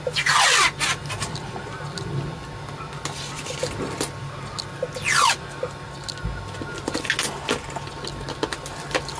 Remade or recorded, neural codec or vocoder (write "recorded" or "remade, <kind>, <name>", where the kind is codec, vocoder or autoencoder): recorded